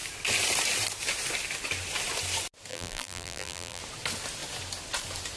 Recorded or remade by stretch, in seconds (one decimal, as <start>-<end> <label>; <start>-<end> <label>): 0.0-2.7 recorded; 2.7-3.8 remade; 3.8-5.4 recorded